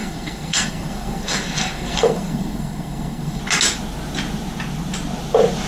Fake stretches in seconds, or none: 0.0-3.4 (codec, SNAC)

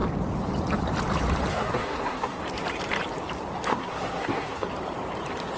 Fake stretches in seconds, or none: 1.5-2.4 (codec, SNAC); 3.7-4.7

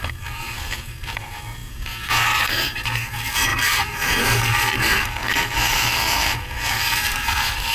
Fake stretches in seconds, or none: 0.0-7.7 (codec, SNAC)

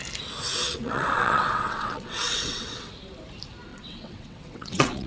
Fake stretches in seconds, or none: 0.5-2.9 (vocoder, WaveNeXt); 3.7-5.1

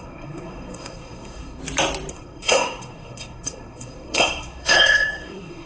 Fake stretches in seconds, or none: 0.0-1.6 (codec, SNAC); 2.1-5.7

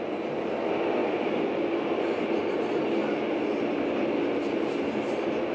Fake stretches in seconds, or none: 1.0-2.6 (vocoder, BigVGAN v2)